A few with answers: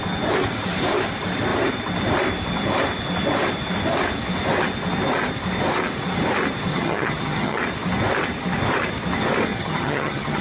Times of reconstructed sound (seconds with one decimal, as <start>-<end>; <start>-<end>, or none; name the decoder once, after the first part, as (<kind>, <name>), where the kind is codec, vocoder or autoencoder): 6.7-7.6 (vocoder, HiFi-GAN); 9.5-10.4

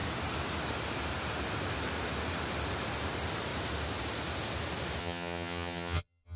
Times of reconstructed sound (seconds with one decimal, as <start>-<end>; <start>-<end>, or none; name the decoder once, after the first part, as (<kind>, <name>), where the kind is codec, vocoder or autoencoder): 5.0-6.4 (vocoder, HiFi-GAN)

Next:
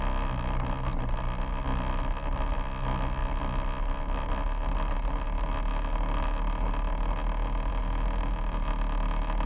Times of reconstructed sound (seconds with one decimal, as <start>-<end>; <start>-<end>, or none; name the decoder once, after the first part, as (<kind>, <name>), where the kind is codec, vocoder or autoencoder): none

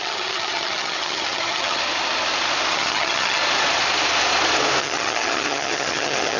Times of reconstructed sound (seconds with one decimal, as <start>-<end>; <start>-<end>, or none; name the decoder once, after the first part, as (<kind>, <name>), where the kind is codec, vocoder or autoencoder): 0.0-1.8 (vocoder, HiFi-GAN); 2.7-3.4; 4.8-6.4